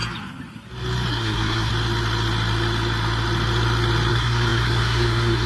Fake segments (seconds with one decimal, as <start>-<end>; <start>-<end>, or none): 1.1-1.7; 4.1-5.5